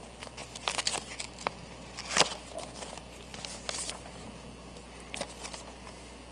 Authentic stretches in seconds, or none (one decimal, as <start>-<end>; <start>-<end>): 0.0-6.3